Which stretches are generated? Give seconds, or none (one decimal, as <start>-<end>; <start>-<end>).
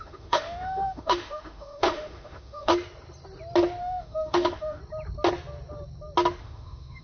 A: 0.0-2.7; 3.8-4.8; 6.4-7.0